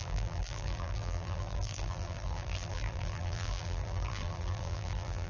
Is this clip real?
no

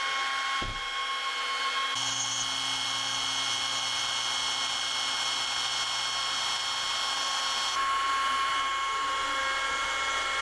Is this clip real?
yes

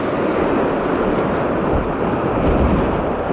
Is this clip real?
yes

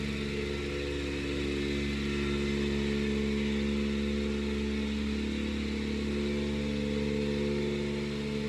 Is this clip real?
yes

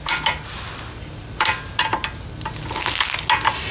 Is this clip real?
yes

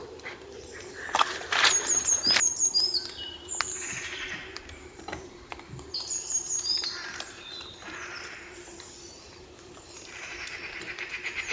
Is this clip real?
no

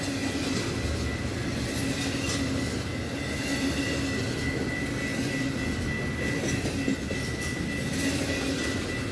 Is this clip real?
yes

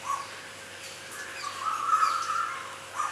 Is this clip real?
yes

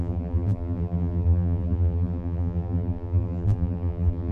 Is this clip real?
no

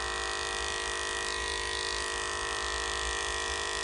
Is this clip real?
yes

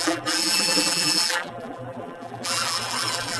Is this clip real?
no